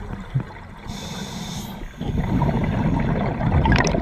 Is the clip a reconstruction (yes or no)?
no